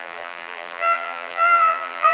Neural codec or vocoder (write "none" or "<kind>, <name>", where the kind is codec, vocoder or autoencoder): vocoder, BigVGAN v2